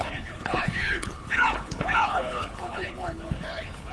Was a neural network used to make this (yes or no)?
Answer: yes